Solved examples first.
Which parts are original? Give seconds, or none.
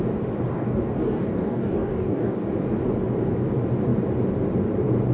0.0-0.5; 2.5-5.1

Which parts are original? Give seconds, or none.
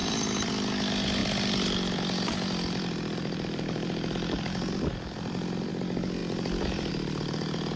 0.5-1.2; 5.7-6.2; 6.9-7.8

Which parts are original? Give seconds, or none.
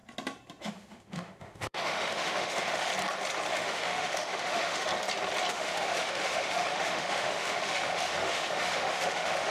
0.0-0.6; 2.9-3.5; 4.9-5.5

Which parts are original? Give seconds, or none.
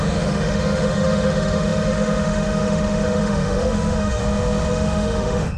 4.2-4.7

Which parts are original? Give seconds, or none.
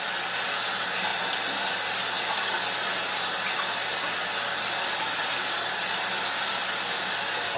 0.0-7.6